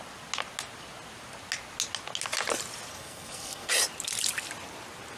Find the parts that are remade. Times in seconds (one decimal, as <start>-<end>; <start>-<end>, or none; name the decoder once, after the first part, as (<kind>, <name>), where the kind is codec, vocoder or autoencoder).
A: 2.9-3.7 (codec, SNAC)